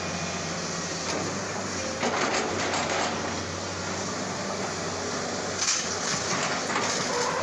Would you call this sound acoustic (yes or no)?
yes